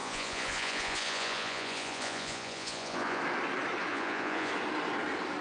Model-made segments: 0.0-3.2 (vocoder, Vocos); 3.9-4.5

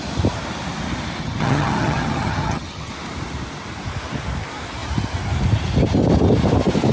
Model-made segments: 1.2-2.9 (vocoder, HiFi-GAN)

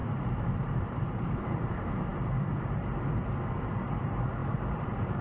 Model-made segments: 0.0-1.6 (vocoder, BigVGAN v2); 4.4-5.2

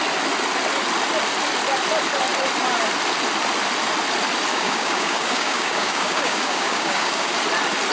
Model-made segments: 4.5-7.3 (codec, DAC)

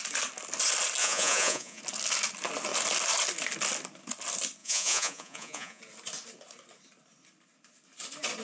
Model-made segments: 1.0-1.8 (vocoder, Vocos); 4.6-5.8

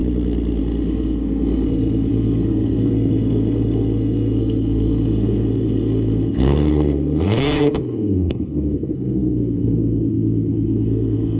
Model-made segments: 0.6-11.4 (codec, SNAC)

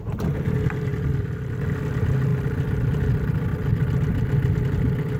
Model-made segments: 0.9-1.8 (vocoder, BigVGAN v2); 2.3-3.0